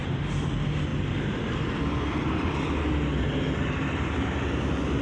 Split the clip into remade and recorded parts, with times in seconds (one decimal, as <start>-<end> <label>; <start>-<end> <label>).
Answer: 0.0-5.0 recorded

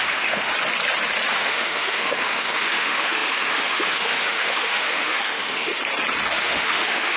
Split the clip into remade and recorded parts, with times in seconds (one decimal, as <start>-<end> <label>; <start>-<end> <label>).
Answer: 0.0-0.5 remade; 0.5-1.3 recorded; 1.3-5.7 remade; 5.7-6.3 recorded; 6.3-7.2 remade